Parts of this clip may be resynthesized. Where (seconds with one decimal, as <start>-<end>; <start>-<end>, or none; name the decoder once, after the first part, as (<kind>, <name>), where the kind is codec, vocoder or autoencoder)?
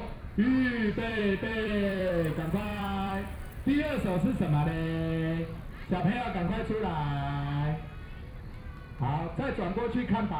0.9-6.6 (vocoder, BigVGAN v2); 8.9-10.4